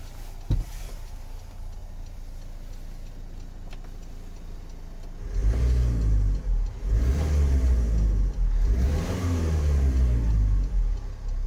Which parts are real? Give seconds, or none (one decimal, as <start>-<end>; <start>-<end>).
0.0-11.5